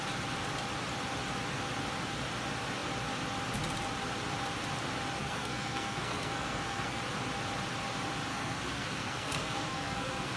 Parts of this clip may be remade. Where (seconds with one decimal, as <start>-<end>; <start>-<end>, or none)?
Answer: 5.2-7.0; 8.3-10.4